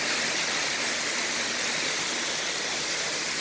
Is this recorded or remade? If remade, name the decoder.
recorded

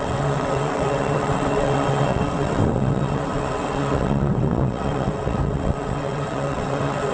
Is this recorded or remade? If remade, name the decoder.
remade, vocoder, WaveNeXt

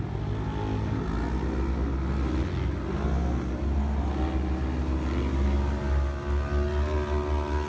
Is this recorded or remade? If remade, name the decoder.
recorded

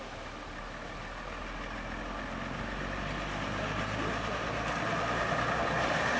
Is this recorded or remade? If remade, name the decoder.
recorded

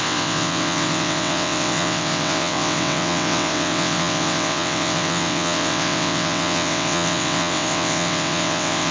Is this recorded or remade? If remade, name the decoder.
remade, vocoder, WaveNeXt